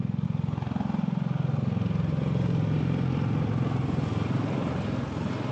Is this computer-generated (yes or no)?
no